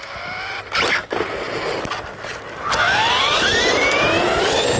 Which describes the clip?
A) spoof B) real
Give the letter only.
B